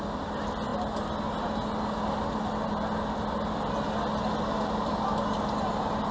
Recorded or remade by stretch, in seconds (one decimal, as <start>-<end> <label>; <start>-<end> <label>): 0.0-6.1 recorded